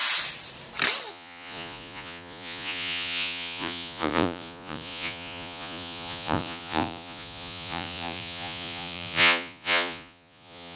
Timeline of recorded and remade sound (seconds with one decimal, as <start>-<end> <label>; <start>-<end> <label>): 0.0-1.1 recorded; 1.1-10.8 remade